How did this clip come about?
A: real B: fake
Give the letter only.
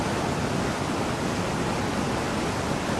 A